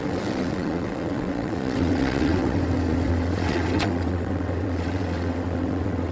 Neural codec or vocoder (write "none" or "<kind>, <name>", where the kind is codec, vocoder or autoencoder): vocoder, WaveNeXt